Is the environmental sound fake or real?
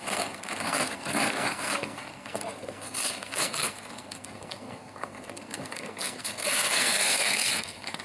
fake